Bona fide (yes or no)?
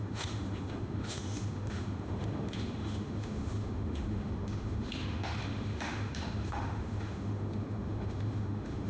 no